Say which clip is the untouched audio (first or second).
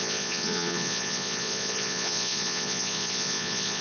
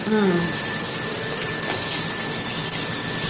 second